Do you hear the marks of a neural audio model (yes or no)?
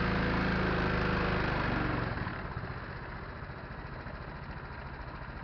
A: no